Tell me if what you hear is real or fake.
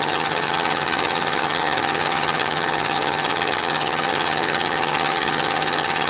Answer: fake